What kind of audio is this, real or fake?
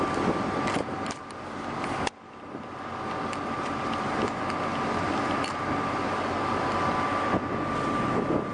real